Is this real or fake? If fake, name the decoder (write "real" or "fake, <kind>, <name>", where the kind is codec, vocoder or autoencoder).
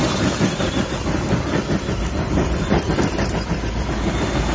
real